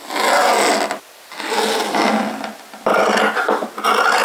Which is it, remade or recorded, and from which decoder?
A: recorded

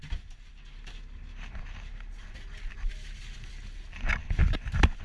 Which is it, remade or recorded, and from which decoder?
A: recorded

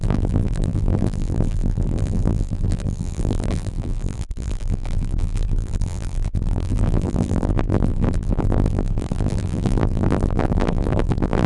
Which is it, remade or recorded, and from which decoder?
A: remade, vocoder, BigVGAN v2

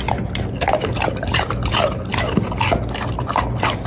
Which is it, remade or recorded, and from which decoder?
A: recorded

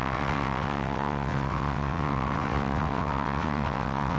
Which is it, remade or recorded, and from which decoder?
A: remade, vocoder, WaveNeXt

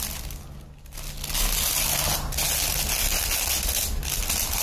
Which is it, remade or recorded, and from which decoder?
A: recorded